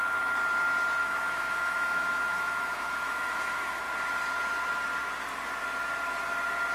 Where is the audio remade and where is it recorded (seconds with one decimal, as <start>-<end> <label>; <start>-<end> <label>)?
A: 0.0-1.0 recorded; 1.0-3.8 remade; 3.8-6.7 recorded

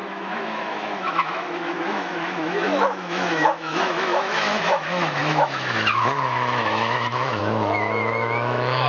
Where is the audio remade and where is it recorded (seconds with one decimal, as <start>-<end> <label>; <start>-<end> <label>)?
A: 0.0-8.9 remade

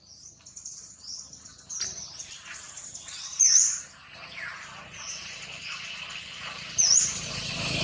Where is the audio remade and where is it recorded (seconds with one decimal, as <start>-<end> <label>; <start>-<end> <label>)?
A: 0.0-7.8 recorded

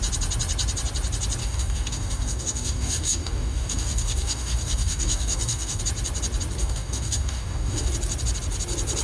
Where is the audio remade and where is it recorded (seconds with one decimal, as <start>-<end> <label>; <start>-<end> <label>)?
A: 0.0-1.4 recorded; 1.4-5.8 remade; 5.8-6.6 recorded; 6.6-7.9 remade; 7.9-9.0 recorded

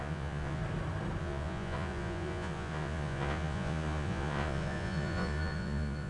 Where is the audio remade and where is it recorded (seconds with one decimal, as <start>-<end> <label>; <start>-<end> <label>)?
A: 0.0-0.6 remade; 0.6-1.2 recorded; 1.2-6.1 remade

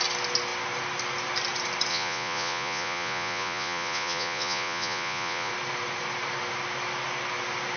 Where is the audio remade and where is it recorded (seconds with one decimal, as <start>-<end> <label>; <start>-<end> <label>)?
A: 0.0-1.9 recorded; 1.9-5.5 remade; 5.5-7.8 recorded

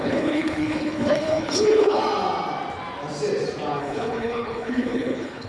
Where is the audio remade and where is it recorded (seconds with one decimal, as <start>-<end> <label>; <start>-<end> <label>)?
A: 0.0-2.0 remade; 2.0-3.8 recorded; 3.8-5.5 remade

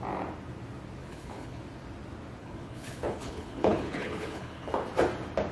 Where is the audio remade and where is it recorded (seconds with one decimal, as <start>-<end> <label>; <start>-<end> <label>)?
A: 0.0-1.0 recorded; 1.0-1.6 remade; 1.6-2.4 recorded; 2.4-4.7 remade; 4.7-5.5 recorded